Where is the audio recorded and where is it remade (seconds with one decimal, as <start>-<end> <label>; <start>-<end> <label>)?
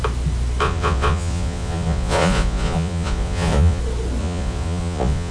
0.0-0.6 recorded; 0.6-3.8 remade; 3.8-4.2 recorded; 4.2-5.3 remade